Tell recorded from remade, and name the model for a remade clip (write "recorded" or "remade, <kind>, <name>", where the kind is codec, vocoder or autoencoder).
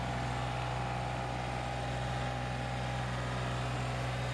recorded